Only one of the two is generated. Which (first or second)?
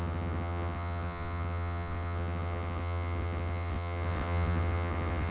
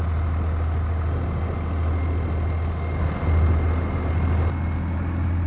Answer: first